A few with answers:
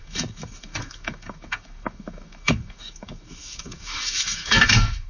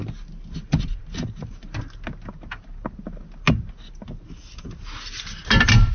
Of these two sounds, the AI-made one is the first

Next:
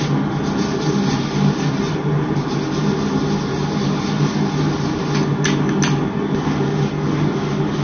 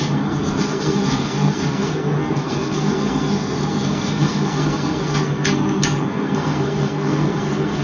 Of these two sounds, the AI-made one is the second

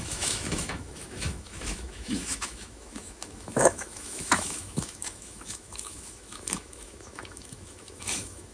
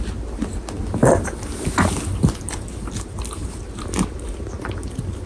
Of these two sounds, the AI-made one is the first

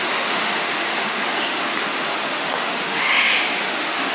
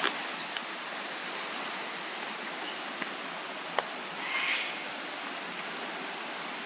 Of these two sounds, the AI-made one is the first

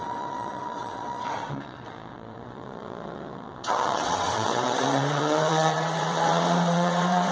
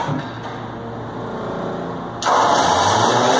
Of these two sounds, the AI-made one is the first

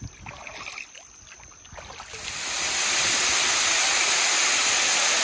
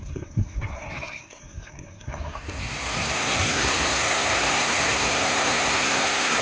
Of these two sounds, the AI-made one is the second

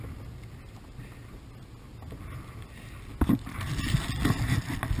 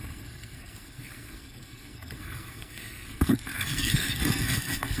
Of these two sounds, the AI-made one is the second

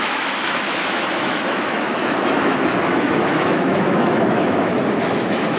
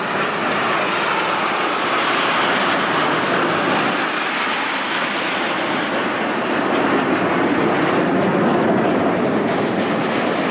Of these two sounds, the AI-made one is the first